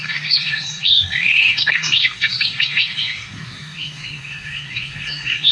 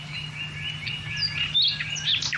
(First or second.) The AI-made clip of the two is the first